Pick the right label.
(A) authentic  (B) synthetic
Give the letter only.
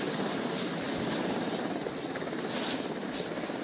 A